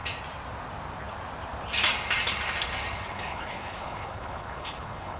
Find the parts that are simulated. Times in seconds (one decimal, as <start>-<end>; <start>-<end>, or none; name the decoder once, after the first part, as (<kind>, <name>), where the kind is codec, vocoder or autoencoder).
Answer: 3.1-5.2 (codec, HILCodec)